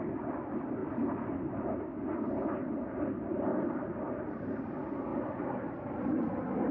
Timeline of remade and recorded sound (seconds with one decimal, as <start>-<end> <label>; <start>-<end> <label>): 0.0-0.8 recorded; 0.8-1.9 remade; 1.9-3.5 recorded; 3.5-4.6 remade; 4.6-6.7 recorded